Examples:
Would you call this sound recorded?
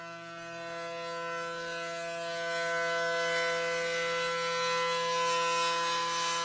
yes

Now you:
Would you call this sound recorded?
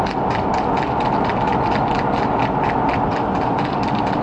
yes